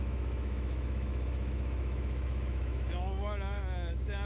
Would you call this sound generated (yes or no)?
yes